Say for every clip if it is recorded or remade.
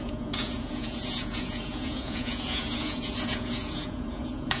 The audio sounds remade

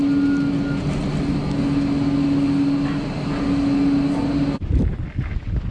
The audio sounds recorded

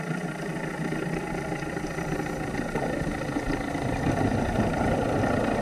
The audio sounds recorded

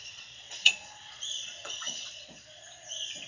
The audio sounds remade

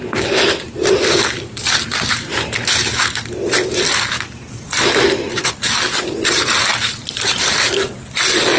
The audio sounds recorded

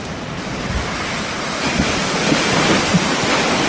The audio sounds recorded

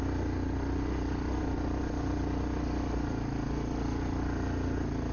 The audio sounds recorded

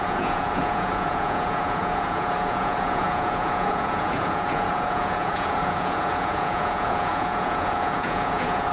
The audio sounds remade